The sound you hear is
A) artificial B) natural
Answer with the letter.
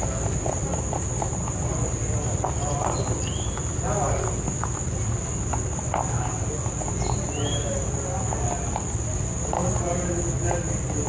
B